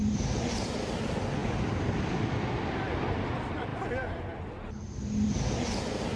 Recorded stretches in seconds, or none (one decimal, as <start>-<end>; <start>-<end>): 0.0-6.2